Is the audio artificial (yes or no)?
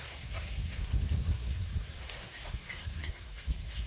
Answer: yes